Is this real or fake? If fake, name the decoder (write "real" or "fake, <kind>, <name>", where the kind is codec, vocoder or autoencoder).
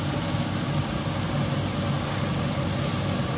real